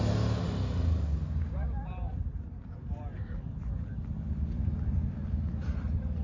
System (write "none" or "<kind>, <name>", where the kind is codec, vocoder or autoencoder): none